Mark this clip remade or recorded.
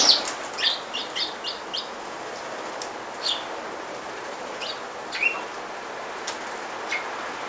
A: recorded